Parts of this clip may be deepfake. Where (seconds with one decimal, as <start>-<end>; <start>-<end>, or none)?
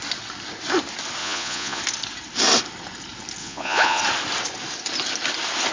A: 1.2-1.8; 3.4-4.0